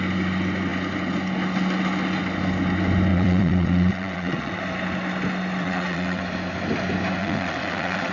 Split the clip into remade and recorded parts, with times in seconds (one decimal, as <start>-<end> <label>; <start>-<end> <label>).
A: 0.0-3.1 recorded; 3.1-4.6 remade; 4.6-5.6 recorded; 5.6-6.2 remade; 6.2-7.2 recorded; 7.2-8.1 remade